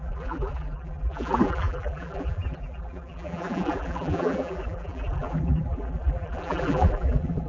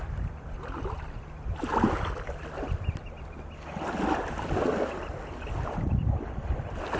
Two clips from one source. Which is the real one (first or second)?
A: second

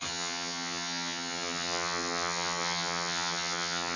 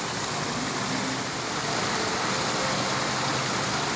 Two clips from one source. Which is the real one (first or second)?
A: second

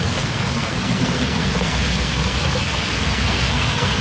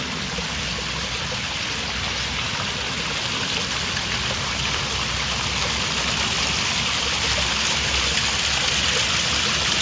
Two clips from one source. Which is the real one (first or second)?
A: second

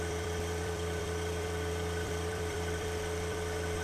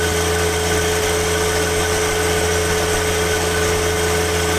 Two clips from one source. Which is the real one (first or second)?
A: second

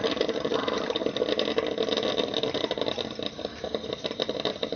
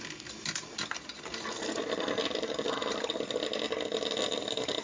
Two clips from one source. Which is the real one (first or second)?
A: second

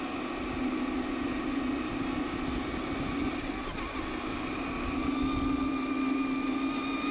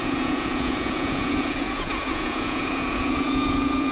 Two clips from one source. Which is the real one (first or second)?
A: first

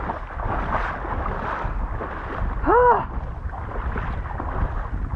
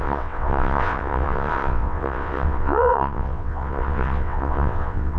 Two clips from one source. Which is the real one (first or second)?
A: first